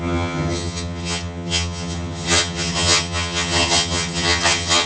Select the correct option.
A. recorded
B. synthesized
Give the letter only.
B